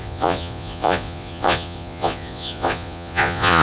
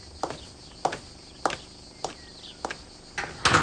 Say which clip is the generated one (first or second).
first